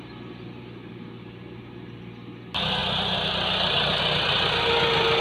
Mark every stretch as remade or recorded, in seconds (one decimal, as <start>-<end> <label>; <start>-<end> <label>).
0.0-5.2 recorded